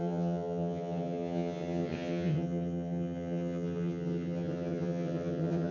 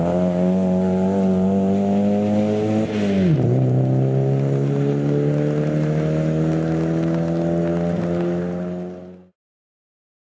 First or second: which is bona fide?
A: second